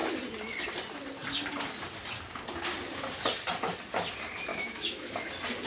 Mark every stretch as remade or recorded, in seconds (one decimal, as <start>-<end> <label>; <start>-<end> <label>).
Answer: 0.0-4.5 recorded; 4.5-5.3 remade; 5.3-5.7 recorded